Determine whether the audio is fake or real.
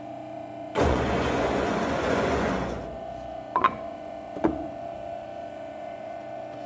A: fake